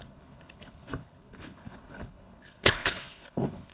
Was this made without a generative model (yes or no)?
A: no